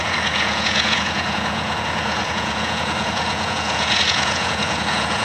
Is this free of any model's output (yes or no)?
no